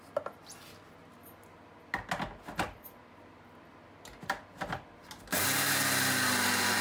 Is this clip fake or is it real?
real